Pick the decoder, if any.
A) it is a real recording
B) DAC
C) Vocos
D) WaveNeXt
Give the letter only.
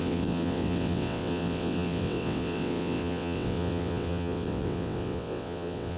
D